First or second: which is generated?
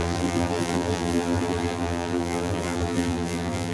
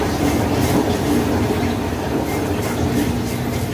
first